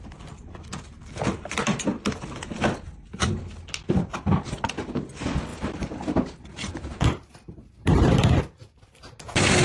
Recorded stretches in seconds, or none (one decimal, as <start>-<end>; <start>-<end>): 0.0-5.5; 8.4-9.6